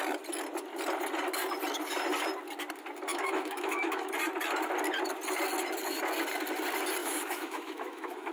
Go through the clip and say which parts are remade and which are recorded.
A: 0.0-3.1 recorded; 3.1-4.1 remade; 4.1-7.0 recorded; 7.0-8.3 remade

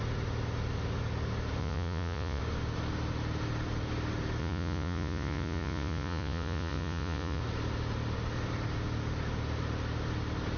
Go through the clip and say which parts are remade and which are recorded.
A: 0.0-1.6 recorded; 1.6-2.4 remade; 2.4-4.4 recorded; 4.4-7.4 remade; 7.4-10.6 recorded

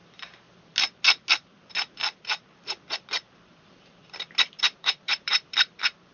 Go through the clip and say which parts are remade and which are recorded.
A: 0.0-3.4 recorded; 3.4-4.0 remade; 4.0-4.6 recorded; 4.6-6.1 remade

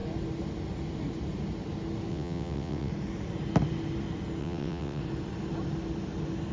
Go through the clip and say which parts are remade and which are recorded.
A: 0.0-2.1 recorded; 2.1-2.9 remade; 2.9-4.4 recorded; 4.4-5.0 remade; 5.0-6.5 recorded